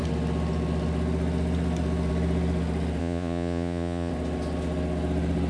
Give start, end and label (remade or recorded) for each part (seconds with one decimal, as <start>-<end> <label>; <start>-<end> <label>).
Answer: 0.0-3.0 recorded; 3.0-4.1 remade; 4.1-5.5 recorded